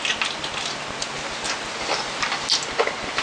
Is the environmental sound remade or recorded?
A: recorded